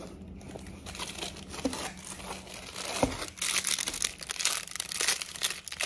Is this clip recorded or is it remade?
recorded